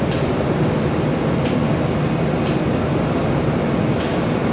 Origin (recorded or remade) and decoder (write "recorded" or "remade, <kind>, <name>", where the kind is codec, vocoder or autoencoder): recorded